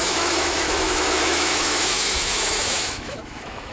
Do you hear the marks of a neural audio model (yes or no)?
yes